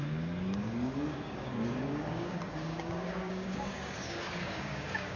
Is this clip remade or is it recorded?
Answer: remade